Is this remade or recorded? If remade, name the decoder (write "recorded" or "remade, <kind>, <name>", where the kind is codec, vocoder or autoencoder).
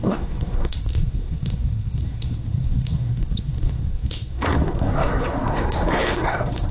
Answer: remade, codec, SNAC